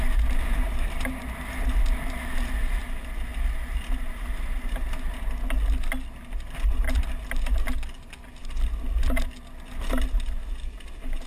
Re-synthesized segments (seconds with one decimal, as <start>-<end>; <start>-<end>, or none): none

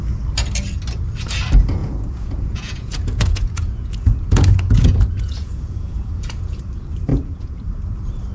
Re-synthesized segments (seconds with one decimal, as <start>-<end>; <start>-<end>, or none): 1.8-6.6; 7.1-7.6